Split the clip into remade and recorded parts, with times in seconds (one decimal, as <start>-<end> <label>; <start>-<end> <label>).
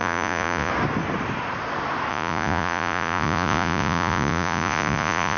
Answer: 0.0-0.7 remade; 0.7-2.1 recorded; 2.1-5.4 remade